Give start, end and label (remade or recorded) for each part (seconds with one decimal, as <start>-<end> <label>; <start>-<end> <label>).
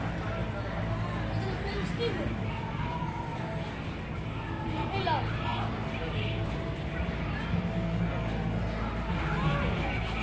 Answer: 0.0-10.2 recorded